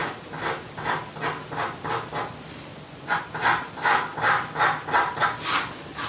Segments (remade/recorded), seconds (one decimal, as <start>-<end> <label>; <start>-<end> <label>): 0.0-2.7 recorded; 2.7-3.2 remade; 3.2-6.1 recorded